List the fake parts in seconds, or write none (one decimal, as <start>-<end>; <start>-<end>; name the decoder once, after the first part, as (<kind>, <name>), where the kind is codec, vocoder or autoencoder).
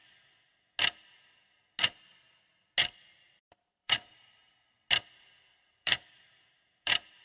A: 3.0-4.5 (vocoder, BigVGAN v2); 5.7-7.2